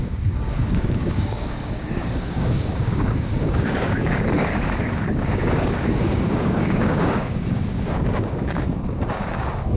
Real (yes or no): no